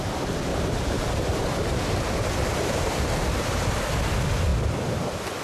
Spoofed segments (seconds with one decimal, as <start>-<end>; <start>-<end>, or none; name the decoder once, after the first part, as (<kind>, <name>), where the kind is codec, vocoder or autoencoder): 0.5-3.7 (vocoder, BigVGAN v2)